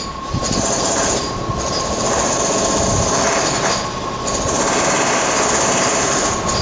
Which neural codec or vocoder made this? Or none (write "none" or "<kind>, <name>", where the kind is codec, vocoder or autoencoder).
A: none